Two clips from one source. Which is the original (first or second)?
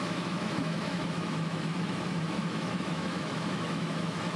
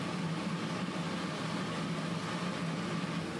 second